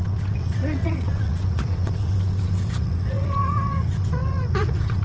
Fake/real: fake